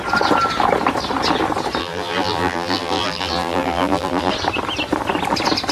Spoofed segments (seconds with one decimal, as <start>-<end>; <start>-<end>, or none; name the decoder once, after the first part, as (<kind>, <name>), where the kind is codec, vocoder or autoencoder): 1.8-4.3 (vocoder, BigVGAN v2)